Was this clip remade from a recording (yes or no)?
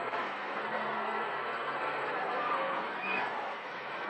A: yes